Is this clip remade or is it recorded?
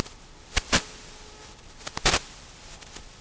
remade